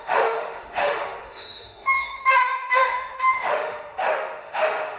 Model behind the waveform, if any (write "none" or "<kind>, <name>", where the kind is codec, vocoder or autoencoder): autoencoder, DAC-VAE